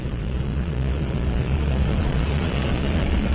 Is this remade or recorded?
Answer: remade